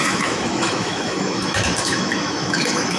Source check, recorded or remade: remade